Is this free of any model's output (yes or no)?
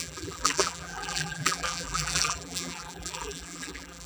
no